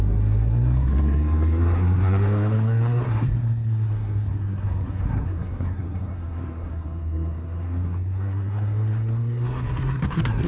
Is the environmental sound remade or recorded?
remade